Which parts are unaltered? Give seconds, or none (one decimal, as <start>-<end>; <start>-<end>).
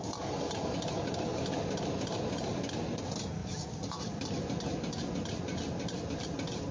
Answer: 0.0-1.3; 2.6-6.7